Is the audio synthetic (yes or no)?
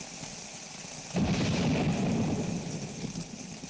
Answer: no